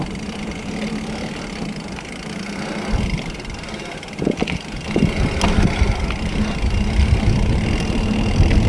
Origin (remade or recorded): recorded